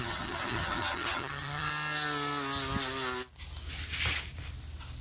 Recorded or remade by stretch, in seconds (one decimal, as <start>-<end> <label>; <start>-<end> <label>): 0.0-1.7 remade; 1.7-5.0 recorded